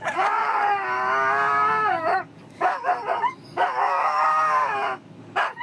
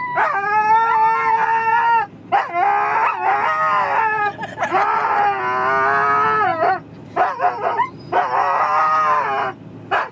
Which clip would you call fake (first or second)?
first